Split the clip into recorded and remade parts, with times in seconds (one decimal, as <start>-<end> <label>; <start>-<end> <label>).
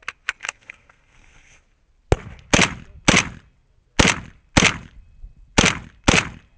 0.0-0.4 recorded; 0.4-1.6 remade; 1.6-6.6 recorded